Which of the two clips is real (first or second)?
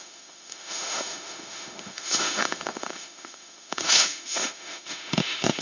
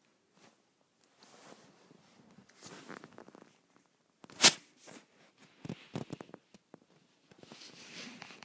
second